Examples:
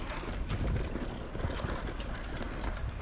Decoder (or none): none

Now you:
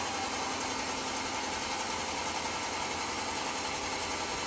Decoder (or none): none